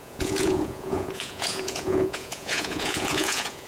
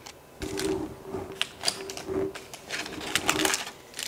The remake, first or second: first